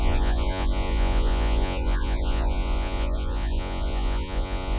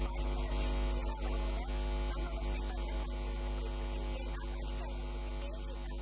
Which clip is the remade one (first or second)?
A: first